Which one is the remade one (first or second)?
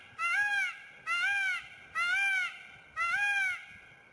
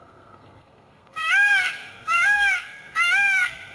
second